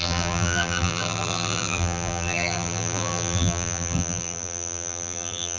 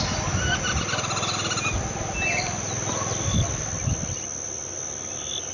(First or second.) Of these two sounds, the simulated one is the first